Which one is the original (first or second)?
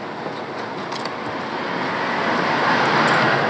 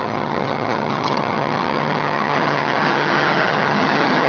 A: first